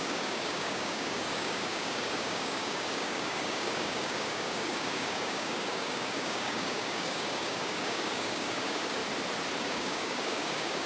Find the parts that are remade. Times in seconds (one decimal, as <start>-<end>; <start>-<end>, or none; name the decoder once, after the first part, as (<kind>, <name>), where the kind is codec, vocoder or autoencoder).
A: 0.0-9.0 (codec, DAC); 9.6-10.9